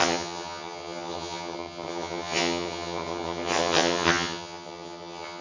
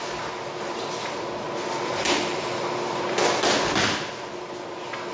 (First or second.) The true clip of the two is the second